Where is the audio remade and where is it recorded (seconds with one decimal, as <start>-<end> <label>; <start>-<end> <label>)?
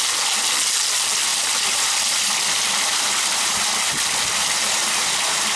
0.0-1.3 recorded; 1.3-3.8 remade; 3.8-4.4 recorded; 4.4-5.6 remade